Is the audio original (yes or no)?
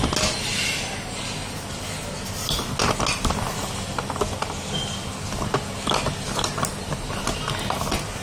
yes